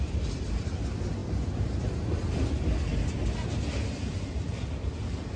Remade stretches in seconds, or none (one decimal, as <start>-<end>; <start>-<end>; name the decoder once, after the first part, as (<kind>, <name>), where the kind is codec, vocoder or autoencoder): none